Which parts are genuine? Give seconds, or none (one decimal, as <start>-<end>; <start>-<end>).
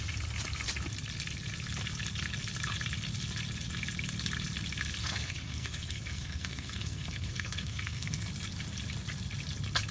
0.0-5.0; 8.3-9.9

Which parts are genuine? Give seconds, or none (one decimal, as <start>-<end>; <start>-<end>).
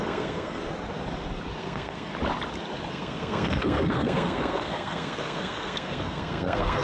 0.6-1.6; 2.1-2.9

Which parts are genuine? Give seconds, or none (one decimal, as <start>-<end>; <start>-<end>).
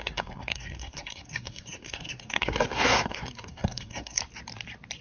4.2-5.0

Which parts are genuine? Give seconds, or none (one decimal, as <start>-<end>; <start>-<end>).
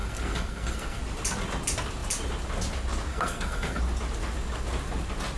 1.0-3.1; 3.8-5.4